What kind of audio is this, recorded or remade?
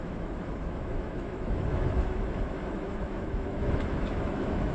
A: remade